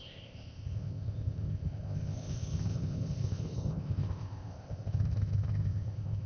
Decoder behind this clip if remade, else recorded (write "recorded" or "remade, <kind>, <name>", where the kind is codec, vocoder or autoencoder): remade, codec, ZipCodec